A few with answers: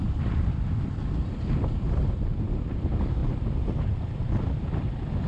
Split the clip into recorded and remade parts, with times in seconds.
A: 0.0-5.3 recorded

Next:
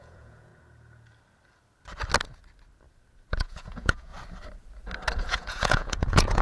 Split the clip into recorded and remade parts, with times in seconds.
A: 0.0-0.5 remade; 0.5-3.3 recorded; 3.3-4.1 remade; 4.1-5.2 recorded; 5.2-6.4 remade

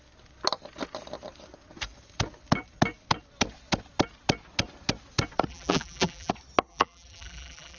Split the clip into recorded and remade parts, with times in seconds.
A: 0.0-5.5 recorded; 5.5-6.3 remade; 6.3-6.7 recorded; 6.7-7.8 remade

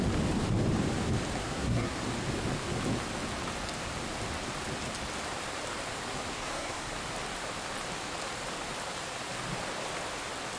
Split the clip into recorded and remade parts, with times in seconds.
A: 0.0-1.4 recorded; 1.4-2.0 remade; 2.0-6.3 recorded; 6.3-6.9 remade; 6.9-10.6 recorded

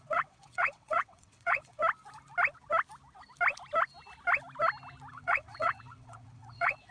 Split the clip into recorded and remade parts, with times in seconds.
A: 0.0-1.8 remade; 1.8-5.1 recorded; 5.1-6.9 remade

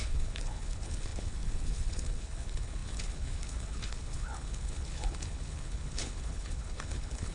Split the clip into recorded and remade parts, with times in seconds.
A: 0.0-7.3 remade

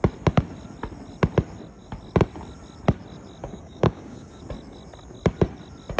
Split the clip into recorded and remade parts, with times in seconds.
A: 0.0-3.4 recorded; 3.4-4.4 remade; 4.4-6.0 recorded

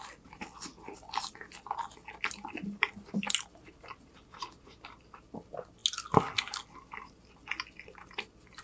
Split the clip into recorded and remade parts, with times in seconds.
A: 0.0-8.6 recorded